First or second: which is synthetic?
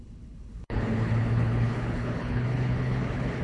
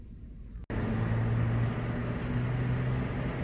first